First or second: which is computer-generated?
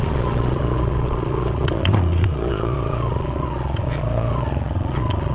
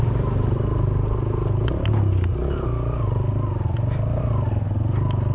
first